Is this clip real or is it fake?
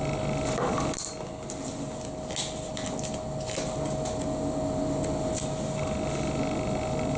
real